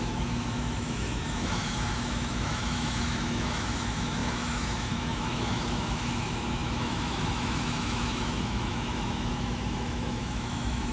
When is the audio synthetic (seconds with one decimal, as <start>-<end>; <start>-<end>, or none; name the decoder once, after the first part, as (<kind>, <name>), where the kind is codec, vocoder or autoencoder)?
0.0-10.9 (autoencoder, DAC-VAE)